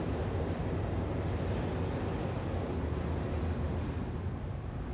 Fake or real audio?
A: real